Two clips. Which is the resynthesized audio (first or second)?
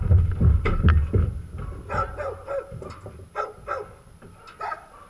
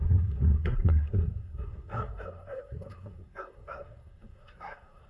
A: second